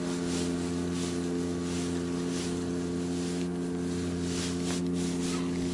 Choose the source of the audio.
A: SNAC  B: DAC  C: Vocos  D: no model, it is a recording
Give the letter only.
D